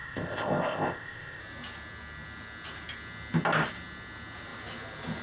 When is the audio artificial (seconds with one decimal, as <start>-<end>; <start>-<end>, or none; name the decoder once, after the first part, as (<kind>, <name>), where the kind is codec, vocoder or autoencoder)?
0.0-1.4 (codec, ZipCodec)